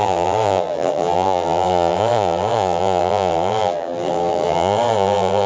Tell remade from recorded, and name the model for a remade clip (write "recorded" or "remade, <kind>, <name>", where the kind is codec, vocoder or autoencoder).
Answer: remade, vocoder, BigVGAN v2